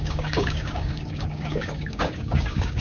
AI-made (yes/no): yes